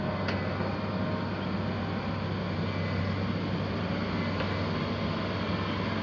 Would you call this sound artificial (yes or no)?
no